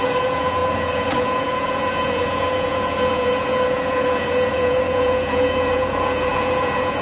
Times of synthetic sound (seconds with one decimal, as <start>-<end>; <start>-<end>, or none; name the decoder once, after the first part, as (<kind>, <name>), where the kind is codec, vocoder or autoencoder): 0.0-7.0 (vocoder, Vocos)